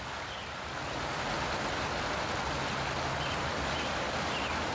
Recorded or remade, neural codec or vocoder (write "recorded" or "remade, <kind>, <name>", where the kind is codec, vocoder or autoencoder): recorded